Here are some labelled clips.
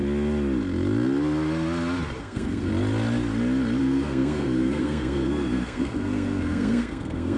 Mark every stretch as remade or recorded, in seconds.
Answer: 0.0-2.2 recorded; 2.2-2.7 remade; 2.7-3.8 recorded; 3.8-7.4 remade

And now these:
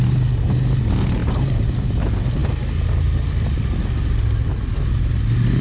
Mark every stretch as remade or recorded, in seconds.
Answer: 0.0-5.6 recorded

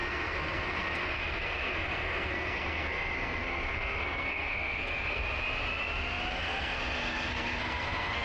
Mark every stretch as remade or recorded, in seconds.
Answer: 0.0-5.2 remade; 5.2-6.3 recorded; 6.3-8.2 remade

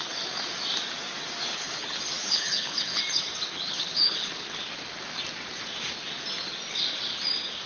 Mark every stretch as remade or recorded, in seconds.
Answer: 0.0-1.5 recorded; 1.5-3.0 remade; 3.0-3.5 recorded; 3.5-4.6 remade; 4.6-7.7 recorded